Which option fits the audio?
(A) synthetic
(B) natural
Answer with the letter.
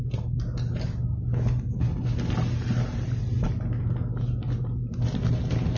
B